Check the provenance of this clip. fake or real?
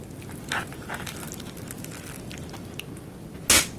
real